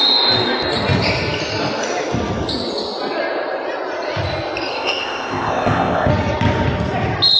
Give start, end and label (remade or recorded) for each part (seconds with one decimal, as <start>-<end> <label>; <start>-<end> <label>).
0.0-4.7 recorded; 4.7-6.1 remade; 6.1-7.4 recorded